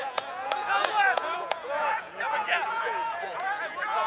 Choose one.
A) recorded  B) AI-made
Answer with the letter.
B